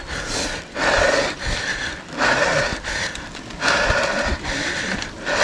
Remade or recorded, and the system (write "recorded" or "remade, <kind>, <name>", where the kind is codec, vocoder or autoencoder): recorded